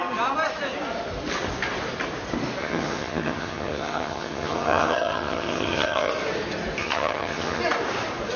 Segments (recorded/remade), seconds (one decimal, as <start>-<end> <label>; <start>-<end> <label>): 0.0-2.6 recorded; 2.6-6.1 remade; 6.1-6.8 recorded; 6.8-7.6 remade; 7.6-8.4 recorded